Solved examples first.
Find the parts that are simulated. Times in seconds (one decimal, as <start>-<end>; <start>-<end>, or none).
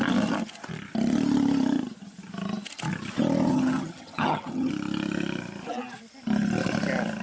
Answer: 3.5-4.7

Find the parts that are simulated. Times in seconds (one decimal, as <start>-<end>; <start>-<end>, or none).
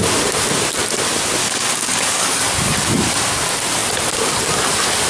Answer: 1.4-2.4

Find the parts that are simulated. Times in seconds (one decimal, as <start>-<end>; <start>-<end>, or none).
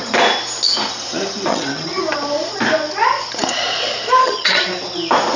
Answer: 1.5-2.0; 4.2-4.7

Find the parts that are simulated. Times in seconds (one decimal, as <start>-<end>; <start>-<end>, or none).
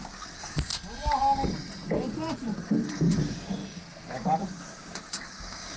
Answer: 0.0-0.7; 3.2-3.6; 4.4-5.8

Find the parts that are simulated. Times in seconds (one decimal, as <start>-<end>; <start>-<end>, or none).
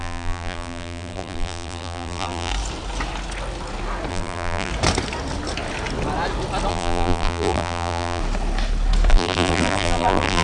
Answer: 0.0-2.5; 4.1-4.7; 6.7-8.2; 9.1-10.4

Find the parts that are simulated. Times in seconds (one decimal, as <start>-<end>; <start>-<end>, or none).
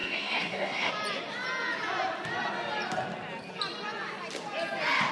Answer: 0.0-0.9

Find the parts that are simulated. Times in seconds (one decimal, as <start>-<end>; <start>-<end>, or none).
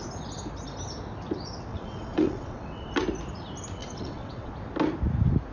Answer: 1.7-2.9; 3.8-4.5